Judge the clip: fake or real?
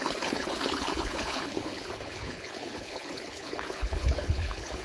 fake